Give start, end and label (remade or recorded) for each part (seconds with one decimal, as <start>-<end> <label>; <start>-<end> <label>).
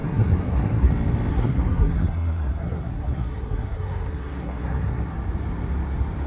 0.0-0.9 remade; 0.9-1.3 recorded; 1.3-5.1 remade; 5.1-6.3 recorded